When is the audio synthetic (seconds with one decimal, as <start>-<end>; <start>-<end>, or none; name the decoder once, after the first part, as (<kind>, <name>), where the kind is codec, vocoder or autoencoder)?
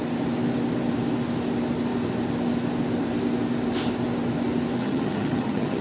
4.8-5.8 (vocoder, HiFi-GAN)